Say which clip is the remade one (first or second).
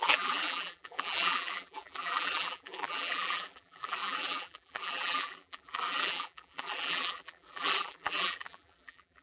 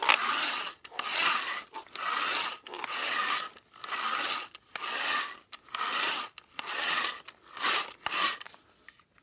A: first